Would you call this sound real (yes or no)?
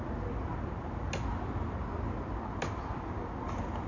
yes